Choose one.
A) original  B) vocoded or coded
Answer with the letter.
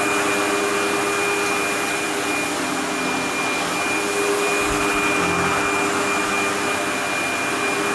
A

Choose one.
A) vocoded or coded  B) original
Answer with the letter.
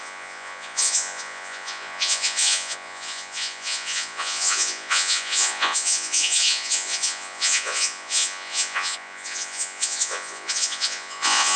A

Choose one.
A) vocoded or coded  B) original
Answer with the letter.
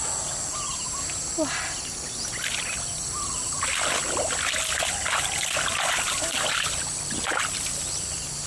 B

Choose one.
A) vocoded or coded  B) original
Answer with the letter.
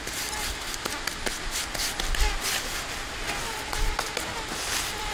B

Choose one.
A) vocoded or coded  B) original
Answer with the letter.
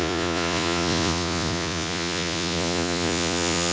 A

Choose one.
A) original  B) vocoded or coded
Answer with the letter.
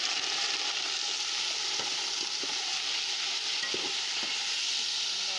A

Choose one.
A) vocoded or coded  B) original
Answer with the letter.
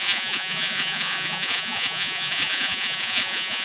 A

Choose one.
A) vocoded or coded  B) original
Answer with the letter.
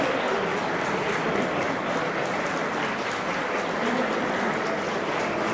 B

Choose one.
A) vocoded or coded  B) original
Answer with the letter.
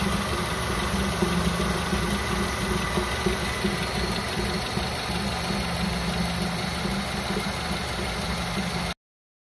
B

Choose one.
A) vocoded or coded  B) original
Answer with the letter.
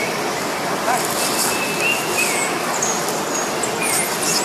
B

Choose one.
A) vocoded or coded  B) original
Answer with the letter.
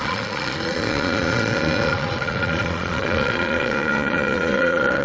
A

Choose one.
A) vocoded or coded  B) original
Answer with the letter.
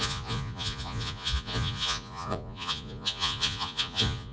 A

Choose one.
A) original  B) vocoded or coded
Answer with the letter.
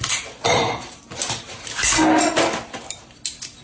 A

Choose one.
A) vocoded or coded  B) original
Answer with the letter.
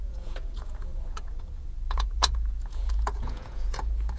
A